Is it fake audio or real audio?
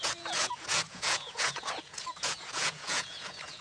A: fake